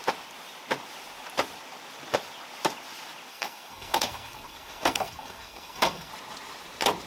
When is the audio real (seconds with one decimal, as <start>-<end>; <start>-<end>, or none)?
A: 0.0-3.3; 6.1-7.1